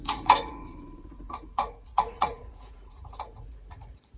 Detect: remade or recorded remade